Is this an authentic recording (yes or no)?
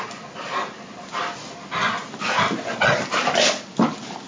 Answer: yes